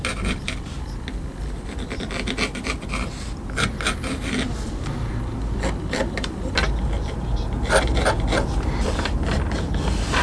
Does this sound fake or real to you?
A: real